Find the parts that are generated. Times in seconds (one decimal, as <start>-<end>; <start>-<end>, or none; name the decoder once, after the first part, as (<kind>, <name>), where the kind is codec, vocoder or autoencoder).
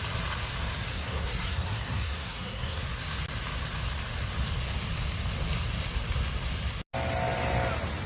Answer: 0.9-2.8 (codec, SNAC)